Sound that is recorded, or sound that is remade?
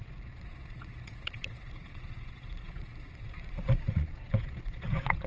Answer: remade